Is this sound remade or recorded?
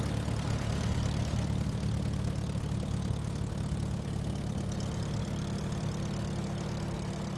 recorded